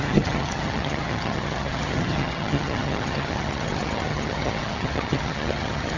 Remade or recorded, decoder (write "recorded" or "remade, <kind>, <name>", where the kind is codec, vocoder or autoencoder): remade, vocoder, HiFi-GAN